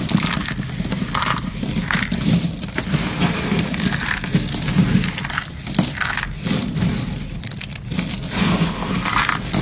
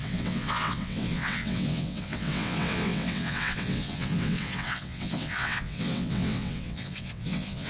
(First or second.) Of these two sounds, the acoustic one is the first